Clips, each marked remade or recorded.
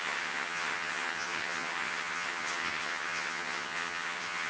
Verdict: remade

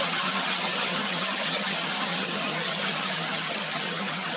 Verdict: remade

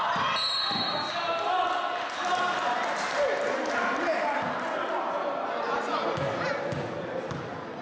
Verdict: recorded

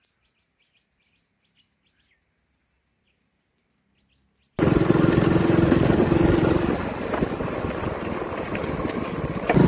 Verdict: recorded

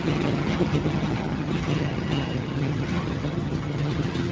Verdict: remade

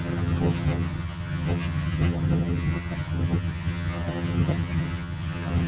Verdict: remade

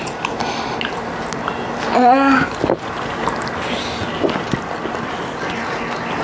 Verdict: recorded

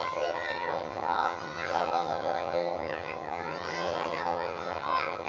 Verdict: remade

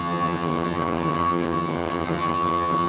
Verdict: remade